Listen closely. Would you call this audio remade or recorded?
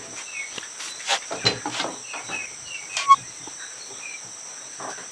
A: recorded